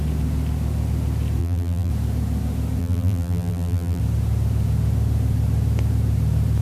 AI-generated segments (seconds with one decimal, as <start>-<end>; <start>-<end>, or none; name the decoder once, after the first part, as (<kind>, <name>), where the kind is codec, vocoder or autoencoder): 1.4-1.9 (vocoder, BigVGAN v2); 2.8-4.0